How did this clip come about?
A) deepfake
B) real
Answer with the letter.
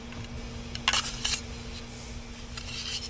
B